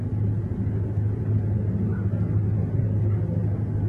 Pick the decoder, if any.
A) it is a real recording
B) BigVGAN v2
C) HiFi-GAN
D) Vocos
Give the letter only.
A